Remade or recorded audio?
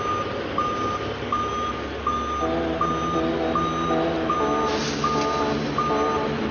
recorded